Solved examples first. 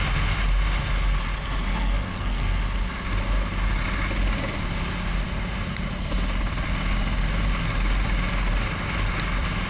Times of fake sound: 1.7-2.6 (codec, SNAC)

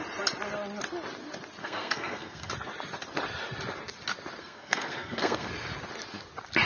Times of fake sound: 1.6-2.5 (codec, SNAC); 4.4-5.5